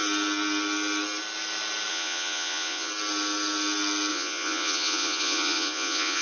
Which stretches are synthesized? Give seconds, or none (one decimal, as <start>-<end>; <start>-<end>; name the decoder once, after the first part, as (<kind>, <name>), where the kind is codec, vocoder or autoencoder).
1.9-2.9 (vocoder, Vocos); 4.1-6.2